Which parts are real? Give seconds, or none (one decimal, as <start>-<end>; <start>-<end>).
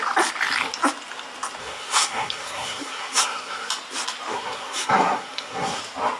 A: 0.0-1.6; 3.7-4.3; 5.8-6.2